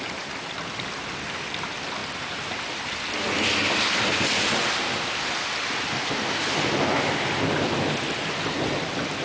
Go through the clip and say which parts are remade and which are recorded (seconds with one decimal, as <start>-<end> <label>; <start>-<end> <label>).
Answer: 0.0-9.2 recorded